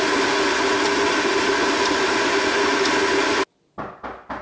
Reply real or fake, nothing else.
real